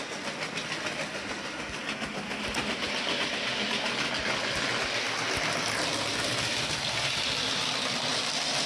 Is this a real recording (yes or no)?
yes